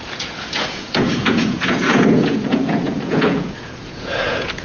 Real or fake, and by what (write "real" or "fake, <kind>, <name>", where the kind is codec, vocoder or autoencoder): fake, vocoder, Vocos